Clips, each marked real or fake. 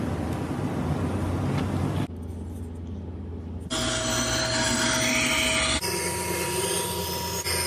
real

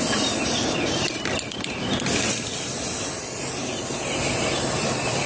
real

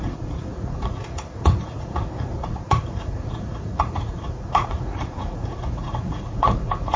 fake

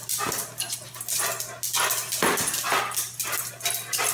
real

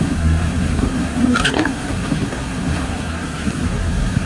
fake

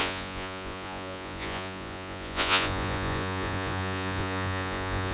fake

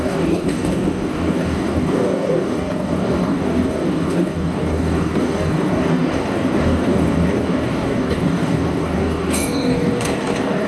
fake